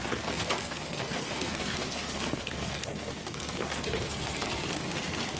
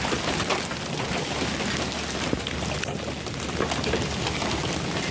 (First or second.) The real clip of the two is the second